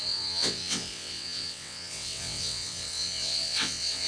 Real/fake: fake